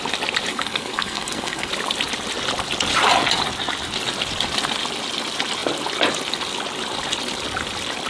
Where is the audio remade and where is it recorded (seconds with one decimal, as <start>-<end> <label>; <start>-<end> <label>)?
0.0-0.5 recorded; 0.5-1.7 remade; 1.7-8.1 recorded